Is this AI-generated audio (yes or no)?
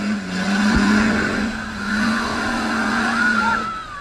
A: yes